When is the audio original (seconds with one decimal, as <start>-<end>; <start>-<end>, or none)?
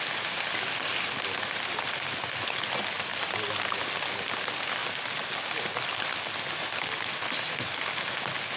0.0-8.6